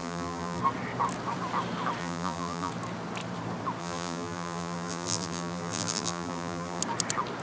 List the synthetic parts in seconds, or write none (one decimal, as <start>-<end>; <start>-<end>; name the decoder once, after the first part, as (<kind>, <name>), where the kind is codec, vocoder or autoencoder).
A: 0.0-0.6 (vocoder, BigVGAN v2); 2.0-2.7; 3.8-6.8